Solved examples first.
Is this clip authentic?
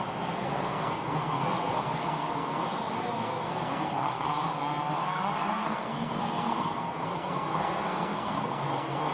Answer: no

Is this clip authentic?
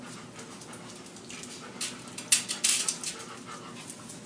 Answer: yes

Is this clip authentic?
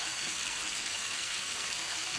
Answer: no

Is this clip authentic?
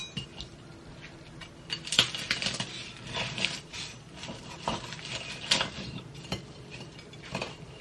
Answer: yes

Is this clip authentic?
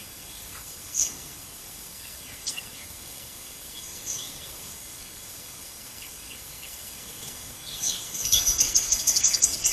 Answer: no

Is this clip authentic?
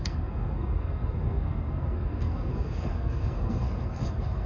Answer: no